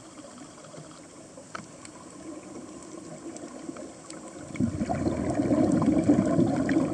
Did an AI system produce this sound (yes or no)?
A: no